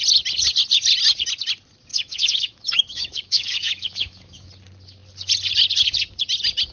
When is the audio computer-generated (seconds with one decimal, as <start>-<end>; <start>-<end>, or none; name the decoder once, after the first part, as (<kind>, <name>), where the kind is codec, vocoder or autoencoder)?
1.9-4.5 (autoencoder, DAC-VAE)